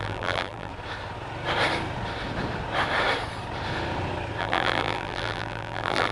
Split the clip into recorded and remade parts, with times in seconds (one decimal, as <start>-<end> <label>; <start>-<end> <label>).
0.0-0.7 remade; 0.7-4.4 recorded; 4.4-6.1 remade